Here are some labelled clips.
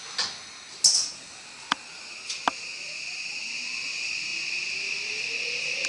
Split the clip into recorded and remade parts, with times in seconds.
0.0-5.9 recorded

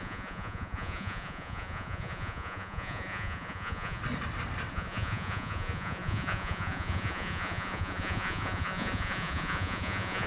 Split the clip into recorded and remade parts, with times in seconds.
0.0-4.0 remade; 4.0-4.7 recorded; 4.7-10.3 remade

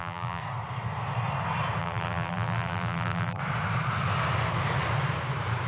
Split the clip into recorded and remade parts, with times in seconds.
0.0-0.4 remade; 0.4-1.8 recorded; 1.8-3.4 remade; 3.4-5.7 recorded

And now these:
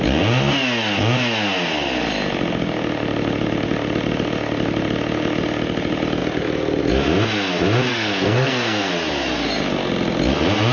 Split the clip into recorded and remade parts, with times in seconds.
0.0-7.9 recorded; 7.9-8.9 remade; 8.9-10.7 recorded

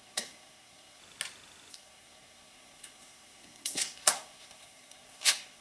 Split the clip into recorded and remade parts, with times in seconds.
0.0-1.0 remade; 1.0-1.7 recorded; 1.7-5.6 remade